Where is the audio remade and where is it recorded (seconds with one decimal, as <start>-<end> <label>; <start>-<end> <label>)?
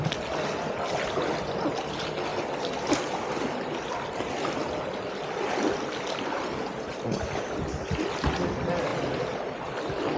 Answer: 0.0-10.2 recorded